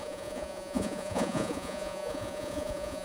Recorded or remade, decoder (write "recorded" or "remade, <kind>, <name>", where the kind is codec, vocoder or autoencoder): remade, vocoder, Vocos